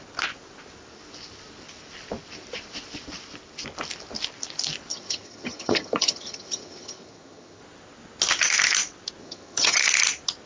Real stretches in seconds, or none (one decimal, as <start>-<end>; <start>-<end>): 0.0-4.9; 7.6-9.2; 9.8-10.5